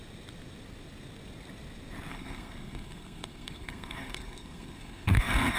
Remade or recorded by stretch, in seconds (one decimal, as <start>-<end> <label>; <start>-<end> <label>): 0.0-2.1 recorded; 2.1-5.6 remade